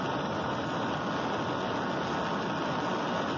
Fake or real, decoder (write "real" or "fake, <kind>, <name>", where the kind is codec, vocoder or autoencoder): real